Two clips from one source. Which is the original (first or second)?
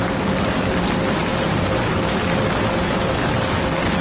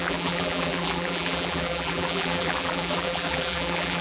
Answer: first